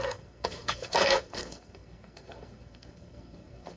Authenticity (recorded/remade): remade